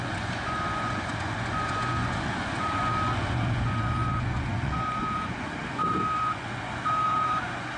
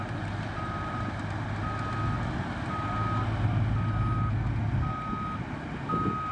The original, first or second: second